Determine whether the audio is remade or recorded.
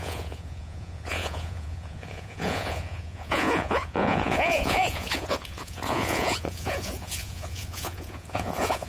remade